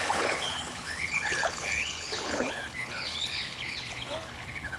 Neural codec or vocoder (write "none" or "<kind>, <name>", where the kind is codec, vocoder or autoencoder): codec, HILCodec